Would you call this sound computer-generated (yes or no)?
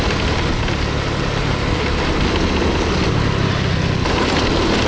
no